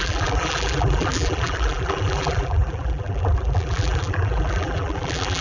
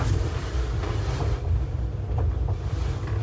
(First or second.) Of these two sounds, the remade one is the first